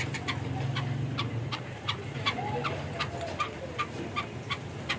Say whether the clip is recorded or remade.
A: recorded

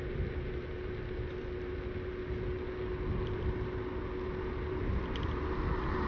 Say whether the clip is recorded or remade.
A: recorded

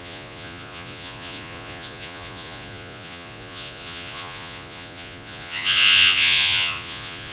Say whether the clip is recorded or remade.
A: remade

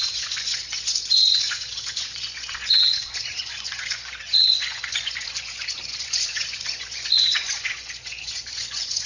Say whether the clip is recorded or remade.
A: remade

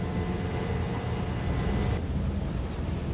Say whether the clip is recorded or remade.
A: recorded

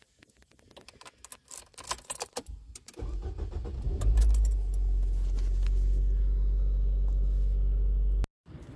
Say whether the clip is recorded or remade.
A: recorded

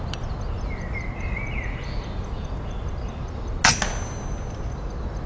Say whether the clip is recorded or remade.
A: recorded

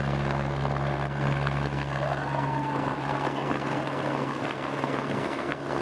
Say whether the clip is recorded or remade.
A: remade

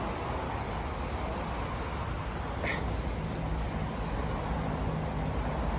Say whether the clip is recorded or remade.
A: recorded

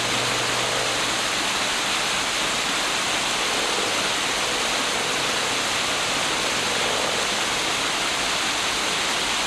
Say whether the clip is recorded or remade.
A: recorded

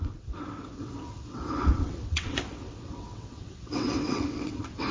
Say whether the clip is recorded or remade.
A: remade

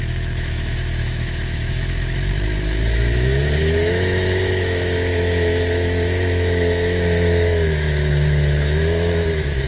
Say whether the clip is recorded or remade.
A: remade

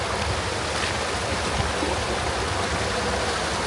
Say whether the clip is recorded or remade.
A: recorded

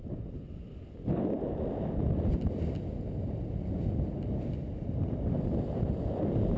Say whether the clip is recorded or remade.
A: recorded